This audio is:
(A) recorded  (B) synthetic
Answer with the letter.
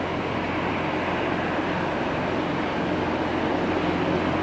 A